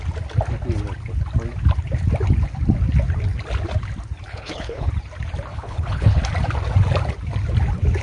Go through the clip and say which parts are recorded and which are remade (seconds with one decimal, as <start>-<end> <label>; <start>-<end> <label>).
0.0-4.3 recorded; 4.3-4.9 remade; 4.9-5.5 recorded; 5.5-6.2 remade; 6.2-8.0 recorded